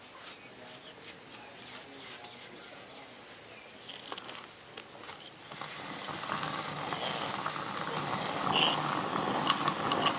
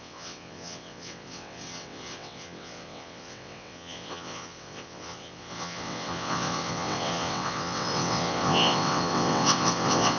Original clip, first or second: first